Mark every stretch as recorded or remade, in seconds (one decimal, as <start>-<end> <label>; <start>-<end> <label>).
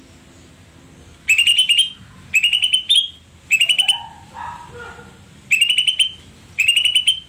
0.0-2.5 recorded; 2.5-7.3 remade